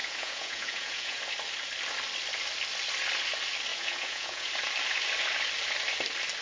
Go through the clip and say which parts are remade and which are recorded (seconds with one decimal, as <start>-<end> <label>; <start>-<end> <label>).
0.0-1.2 remade; 1.2-3.7 recorded; 3.7-4.5 remade; 4.5-6.4 recorded